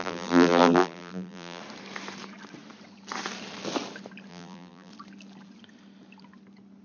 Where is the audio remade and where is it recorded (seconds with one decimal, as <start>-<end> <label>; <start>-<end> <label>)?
0.0-1.6 remade; 1.6-4.3 recorded; 4.3-4.9 remade; 4.9-6.8 recorded